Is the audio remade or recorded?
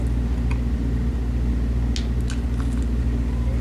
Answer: recorded